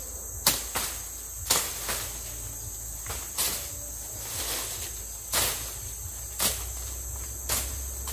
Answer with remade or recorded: recorded